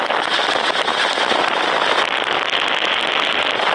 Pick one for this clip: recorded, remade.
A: recorded